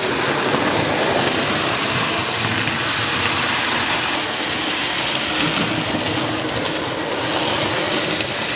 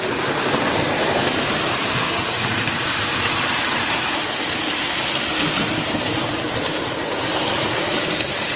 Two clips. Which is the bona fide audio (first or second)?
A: first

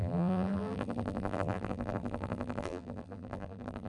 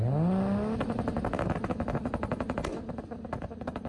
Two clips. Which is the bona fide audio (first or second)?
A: second